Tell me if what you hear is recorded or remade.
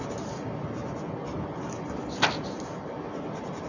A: recorded